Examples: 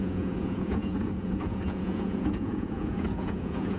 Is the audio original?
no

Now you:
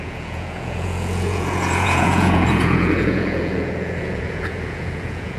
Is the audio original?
no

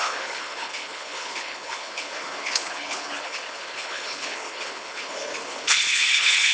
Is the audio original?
no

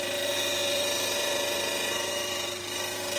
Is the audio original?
no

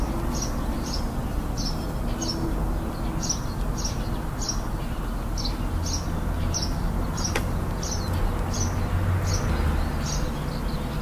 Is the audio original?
yes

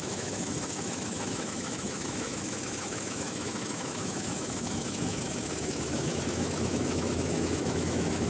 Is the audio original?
no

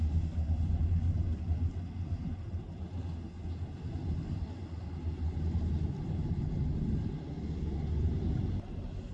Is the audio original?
yes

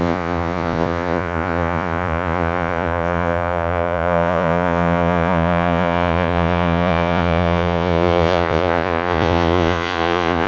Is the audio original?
no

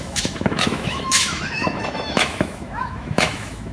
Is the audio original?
no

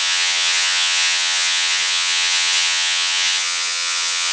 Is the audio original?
no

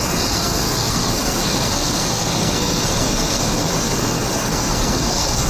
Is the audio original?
no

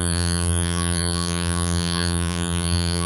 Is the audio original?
no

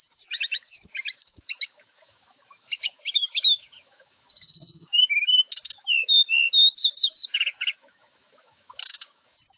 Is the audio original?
no